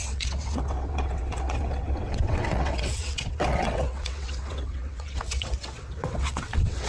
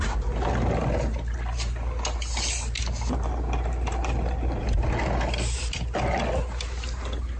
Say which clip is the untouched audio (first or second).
second